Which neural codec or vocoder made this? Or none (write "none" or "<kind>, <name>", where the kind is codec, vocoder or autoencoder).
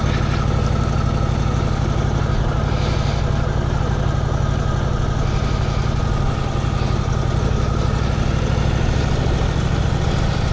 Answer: none